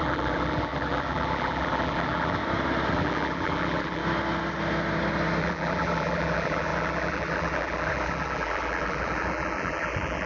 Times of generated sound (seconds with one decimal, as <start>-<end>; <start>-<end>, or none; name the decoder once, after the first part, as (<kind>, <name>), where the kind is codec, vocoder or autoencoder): 0.0-2.4 (vocoder, BigVGAN v2); 2.9-4.0; 5.4-10.3